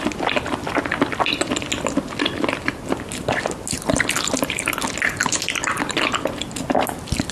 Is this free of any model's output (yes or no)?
yes